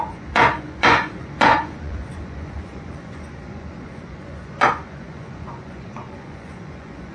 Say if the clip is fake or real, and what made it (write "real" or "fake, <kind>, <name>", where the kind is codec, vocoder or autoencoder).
fake, vocoder, Vocos